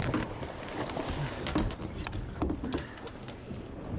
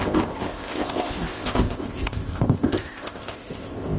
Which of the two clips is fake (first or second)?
second